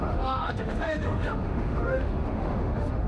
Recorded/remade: remade